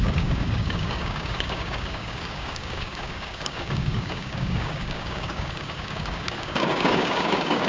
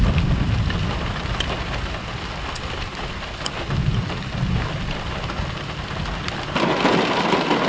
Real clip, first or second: second